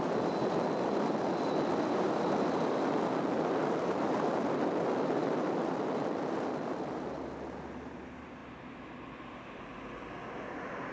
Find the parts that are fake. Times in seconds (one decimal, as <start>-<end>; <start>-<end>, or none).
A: none